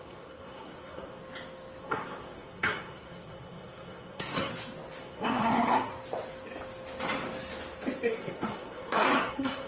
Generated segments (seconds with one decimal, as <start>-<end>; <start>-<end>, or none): 0.0-1.2; 1.8-4.5; 5.0-5.9; 8.1-9.7